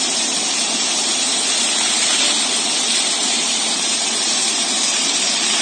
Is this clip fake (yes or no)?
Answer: yes